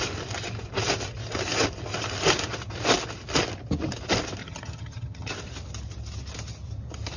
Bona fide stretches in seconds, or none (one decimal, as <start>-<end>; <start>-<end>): 0.0-4.4; 5.3-7.2